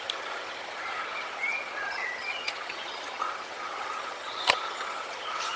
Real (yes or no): no